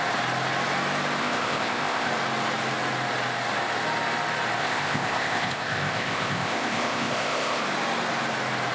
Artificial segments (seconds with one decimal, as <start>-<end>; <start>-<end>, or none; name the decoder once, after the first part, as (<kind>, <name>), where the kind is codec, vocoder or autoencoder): 1.2-2.1 (codec, ZipCodec); 4.6-7.6